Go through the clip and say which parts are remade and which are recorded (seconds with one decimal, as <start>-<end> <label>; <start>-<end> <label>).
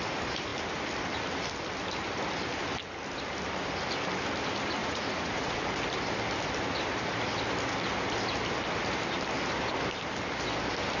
0.0-4.8 recorded; 4.8-5.6 remade; 5.6-11.0 recorded